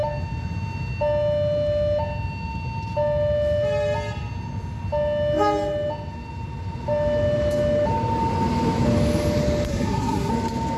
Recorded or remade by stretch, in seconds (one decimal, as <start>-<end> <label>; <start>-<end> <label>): 0.0-9.7 recorded; 9.7-10.3 remade; 10.3-10.8 recorded